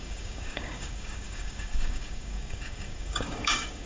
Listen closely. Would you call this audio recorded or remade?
remade